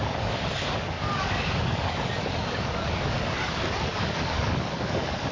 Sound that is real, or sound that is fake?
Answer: fake